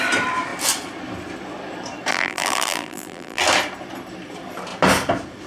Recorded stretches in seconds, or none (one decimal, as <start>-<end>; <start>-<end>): 0.0-2.1; 3.4-5.5